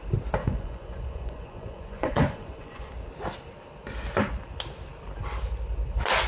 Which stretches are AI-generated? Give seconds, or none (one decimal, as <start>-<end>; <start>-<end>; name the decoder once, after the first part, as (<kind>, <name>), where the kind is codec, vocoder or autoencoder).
0.4-2.9 (vocoder, Vocos)